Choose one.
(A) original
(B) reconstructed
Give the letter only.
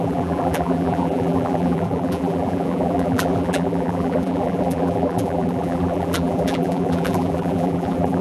B